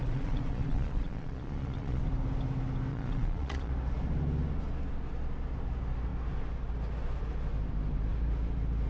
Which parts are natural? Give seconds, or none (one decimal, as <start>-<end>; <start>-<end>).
2.0-2.9; 3.7-8.9